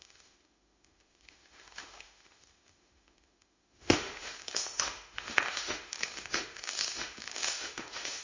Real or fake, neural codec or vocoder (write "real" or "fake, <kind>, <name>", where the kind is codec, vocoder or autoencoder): fake, autoencoder, DAC-VAE